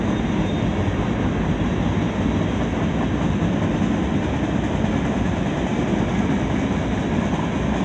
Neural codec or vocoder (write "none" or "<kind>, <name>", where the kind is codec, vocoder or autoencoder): none